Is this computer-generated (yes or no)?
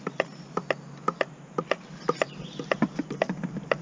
no